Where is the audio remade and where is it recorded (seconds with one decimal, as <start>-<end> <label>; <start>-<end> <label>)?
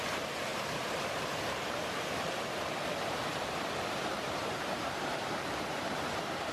0.0-0.5 recorded; 0.5-2.6 remade; 2.6-4.4 recorded; 4.4-6.0 remade; 6.0-6.5 recorded